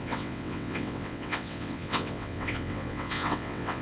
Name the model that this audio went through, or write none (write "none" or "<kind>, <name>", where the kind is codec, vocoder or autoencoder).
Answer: vocoder, WaveNeXt